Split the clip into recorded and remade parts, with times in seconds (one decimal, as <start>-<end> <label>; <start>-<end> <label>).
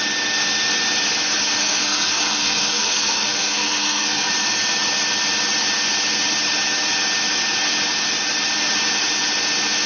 0.0-1.6 recorded; 1.6-4.3 remade; 4.3-9.9 recorded